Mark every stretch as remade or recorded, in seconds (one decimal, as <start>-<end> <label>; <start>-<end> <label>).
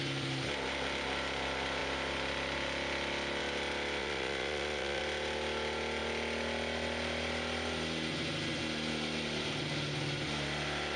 0.0-4.0 recorded; 4.0-5.0 remade; 5.0-11.0 recorded